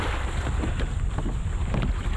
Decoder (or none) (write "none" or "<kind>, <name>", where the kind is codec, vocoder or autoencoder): none